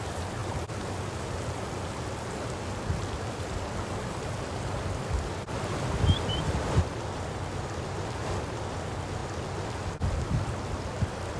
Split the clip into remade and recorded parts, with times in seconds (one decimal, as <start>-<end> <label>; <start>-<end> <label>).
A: 0.0-0.4 remade; 0.4-5.0 recorded; 5.0-9.2 remade; 9.2-9.8 recorded; 9.8-11.4 remade